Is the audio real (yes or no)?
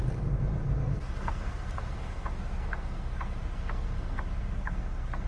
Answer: no